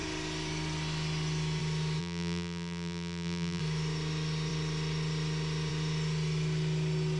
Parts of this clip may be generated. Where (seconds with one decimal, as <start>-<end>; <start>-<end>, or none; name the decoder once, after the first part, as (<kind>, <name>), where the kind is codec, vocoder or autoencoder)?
2.0-3.6 (vocoder, BigVGAN v2)